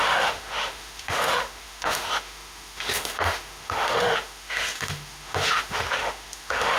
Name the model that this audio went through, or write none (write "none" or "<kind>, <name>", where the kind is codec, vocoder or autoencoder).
autoencoder, DAC-VAE